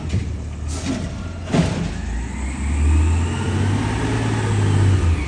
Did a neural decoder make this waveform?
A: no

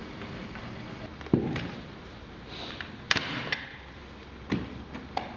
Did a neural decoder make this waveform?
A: no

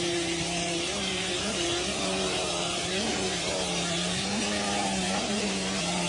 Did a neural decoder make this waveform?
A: yes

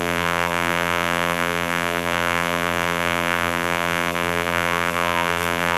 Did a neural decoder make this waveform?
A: yes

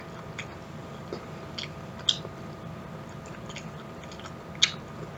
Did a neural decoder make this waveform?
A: no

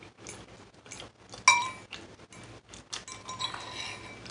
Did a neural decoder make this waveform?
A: no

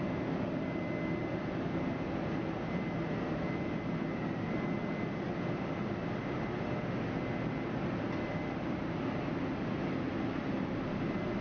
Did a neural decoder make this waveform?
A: no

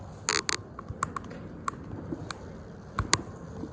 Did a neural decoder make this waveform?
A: no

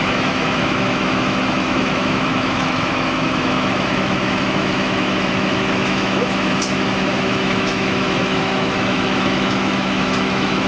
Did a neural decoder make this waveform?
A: yes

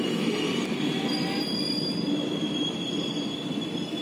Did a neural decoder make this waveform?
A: no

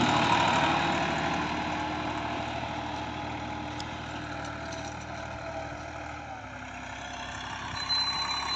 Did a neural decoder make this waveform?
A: no